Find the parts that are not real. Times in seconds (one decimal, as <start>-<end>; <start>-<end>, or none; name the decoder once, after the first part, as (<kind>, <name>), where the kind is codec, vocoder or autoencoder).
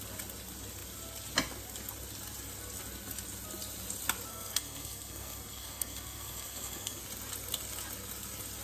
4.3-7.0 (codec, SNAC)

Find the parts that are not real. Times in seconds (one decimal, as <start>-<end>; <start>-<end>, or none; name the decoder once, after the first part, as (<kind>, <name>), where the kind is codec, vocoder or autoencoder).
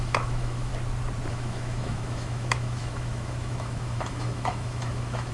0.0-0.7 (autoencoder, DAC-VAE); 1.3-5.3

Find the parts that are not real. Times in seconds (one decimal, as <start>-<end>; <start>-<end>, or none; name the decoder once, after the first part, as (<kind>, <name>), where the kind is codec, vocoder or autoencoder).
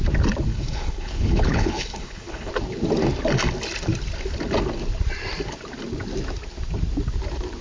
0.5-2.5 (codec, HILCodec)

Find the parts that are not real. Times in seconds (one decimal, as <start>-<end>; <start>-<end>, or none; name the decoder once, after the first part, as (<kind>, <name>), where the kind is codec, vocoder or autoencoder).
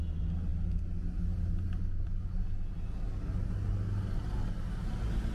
none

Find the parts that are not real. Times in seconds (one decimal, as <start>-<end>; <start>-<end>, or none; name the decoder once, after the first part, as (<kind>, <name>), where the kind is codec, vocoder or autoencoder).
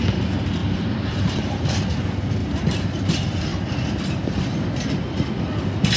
0.6-1.3 (vocoder, BigVGAN v2); 2.4-3.1